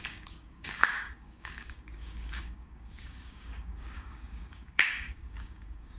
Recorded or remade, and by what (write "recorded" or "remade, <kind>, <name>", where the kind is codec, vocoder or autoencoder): remade, codec, DAC